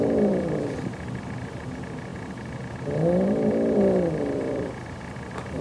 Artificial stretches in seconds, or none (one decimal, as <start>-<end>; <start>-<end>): none